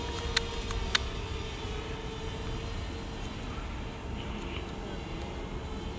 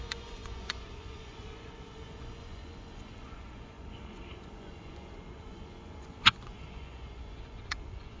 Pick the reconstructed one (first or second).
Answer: second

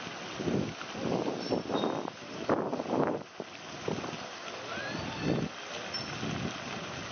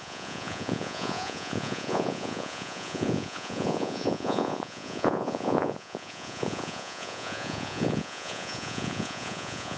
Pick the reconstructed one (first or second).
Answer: second